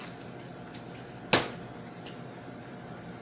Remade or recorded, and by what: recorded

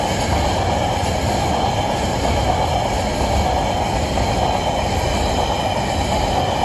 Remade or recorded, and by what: recorded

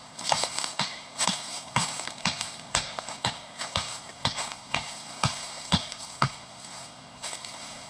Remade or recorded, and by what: remade, codec, SNAC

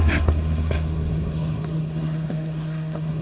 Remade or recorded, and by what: remade, codec, SNAC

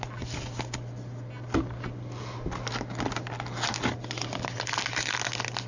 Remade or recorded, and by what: recorded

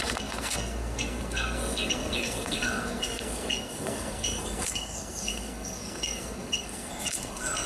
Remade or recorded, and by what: remade, codec, SNAC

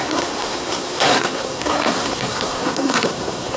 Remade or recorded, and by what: remade, codec, SNAC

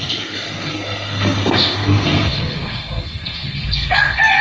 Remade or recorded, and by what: remade, codec, SNAC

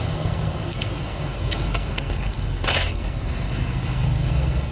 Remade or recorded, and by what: remade, codec, SNAC